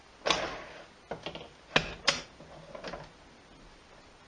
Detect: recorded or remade recorded